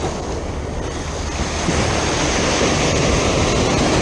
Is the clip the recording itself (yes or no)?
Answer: yes